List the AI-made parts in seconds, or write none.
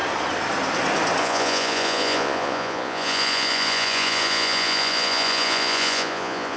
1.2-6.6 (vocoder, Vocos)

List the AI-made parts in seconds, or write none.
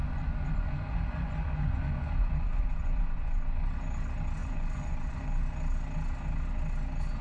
0.0-3.8 (vocoder, Vocos); 4.4-5.4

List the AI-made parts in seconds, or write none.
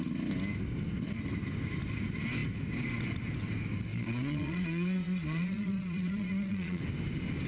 3.9-6.8 (vocoder, Vocos)